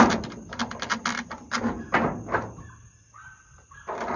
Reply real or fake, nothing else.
real